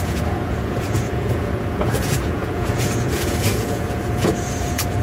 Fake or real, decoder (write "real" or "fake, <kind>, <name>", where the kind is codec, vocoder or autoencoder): fake, vocoder, Vocos